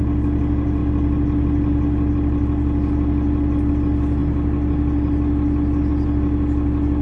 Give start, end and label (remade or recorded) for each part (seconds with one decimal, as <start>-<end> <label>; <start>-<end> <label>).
0.0-7.0 recorded